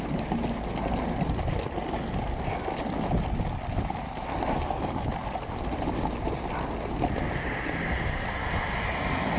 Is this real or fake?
real